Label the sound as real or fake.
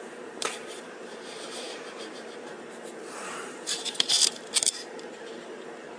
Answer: fake